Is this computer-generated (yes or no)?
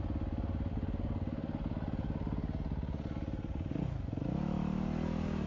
no